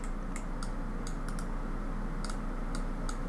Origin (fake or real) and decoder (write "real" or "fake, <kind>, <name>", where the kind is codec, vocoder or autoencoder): real